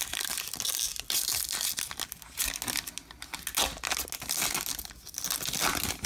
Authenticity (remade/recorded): recorded